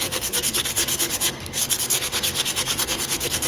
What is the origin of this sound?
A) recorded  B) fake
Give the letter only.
B